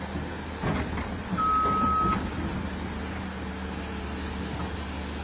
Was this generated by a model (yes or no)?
no